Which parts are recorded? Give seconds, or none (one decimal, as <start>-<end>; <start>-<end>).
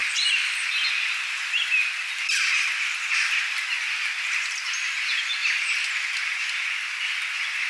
0.0-7.7